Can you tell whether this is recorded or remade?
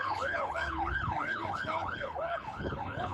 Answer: remade